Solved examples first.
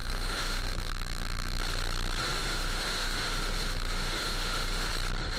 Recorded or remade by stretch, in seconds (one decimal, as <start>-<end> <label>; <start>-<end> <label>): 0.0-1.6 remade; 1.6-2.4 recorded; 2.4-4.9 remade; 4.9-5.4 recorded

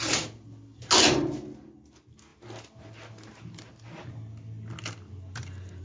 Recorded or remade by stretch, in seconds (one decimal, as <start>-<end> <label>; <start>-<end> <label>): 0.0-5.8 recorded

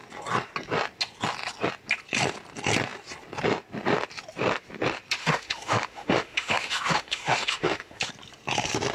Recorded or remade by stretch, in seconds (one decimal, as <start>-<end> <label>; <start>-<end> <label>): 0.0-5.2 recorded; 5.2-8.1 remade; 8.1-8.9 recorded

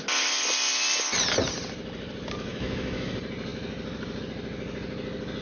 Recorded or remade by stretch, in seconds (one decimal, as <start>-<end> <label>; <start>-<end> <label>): 0.0-2.5 recorded; 2.5-3.1 remade; 3.1-5.4 recorded